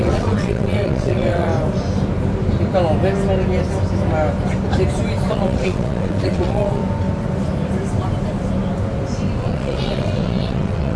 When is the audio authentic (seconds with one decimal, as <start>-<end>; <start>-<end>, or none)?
1.5-5.3; 6.8-9.4